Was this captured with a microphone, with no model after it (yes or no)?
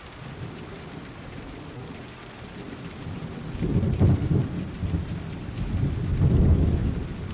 yes